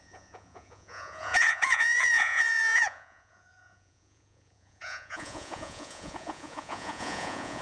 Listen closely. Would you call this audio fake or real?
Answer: fake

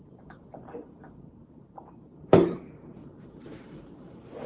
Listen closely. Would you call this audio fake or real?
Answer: fake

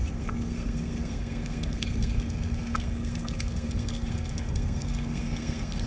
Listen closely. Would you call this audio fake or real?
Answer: fake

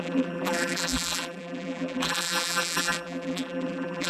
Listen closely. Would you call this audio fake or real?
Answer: fake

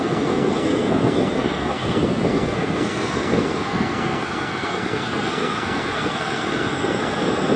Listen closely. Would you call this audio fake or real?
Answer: fake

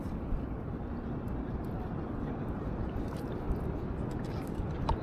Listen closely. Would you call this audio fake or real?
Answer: real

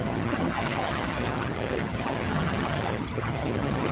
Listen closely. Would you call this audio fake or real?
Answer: fake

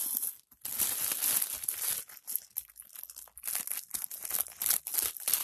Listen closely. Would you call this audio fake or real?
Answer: real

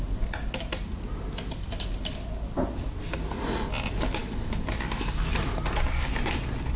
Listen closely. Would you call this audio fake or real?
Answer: real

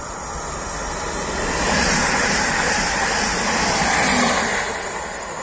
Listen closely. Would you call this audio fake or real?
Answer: real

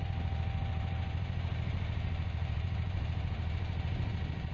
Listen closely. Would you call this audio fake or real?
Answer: fake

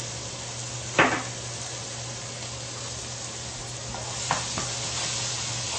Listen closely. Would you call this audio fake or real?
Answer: real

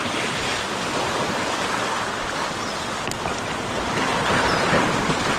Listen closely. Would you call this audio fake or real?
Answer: real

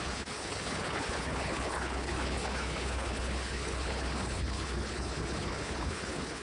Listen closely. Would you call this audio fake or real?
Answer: fake